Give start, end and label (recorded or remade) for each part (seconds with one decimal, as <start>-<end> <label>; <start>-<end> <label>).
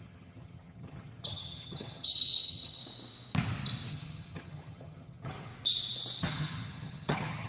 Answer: 0.0-2.8 remade; 2.8-3.9 recorded; 3.9-5.5 remade; 5.5-6.2 recorded; 6.2-7.5 remade